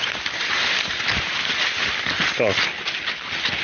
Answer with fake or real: real